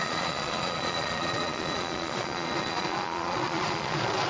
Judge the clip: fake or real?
fake